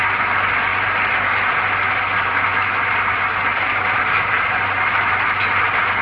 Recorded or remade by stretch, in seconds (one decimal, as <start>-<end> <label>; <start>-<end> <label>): 0.0-6.0 recorded